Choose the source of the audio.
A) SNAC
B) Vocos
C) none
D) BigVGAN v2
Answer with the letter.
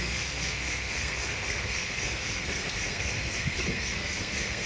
A